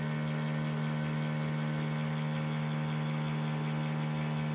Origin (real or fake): real